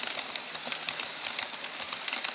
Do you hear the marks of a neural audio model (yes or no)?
no